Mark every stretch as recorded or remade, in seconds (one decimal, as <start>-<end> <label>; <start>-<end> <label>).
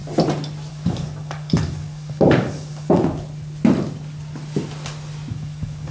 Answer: 0.0-0.7 recorded; 0.7-3.0 remade; 3.0-5.3 recorded; 5.3-5.9 remade